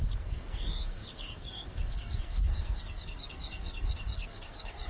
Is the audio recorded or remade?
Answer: remade